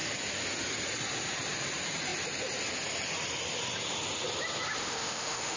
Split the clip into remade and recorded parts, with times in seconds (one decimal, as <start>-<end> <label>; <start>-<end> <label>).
0.0-4.8 recorded; 4.8-5.6 remade